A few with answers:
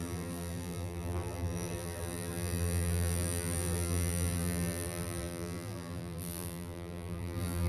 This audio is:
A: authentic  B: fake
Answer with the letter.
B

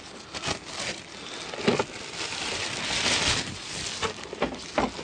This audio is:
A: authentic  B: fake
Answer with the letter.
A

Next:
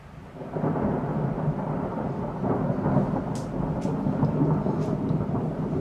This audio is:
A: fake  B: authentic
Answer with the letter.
B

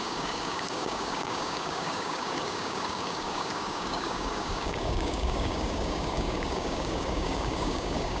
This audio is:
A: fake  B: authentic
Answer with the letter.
A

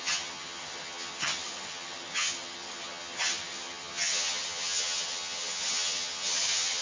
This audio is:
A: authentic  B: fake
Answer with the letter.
B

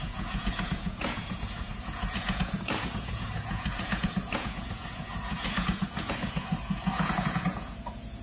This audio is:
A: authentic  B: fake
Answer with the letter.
B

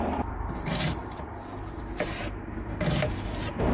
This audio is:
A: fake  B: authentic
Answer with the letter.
A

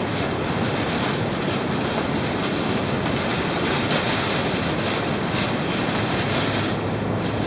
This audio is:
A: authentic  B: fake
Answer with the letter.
A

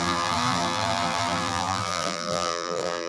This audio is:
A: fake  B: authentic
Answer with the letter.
A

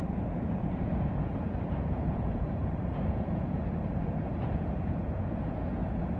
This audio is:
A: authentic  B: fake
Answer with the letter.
B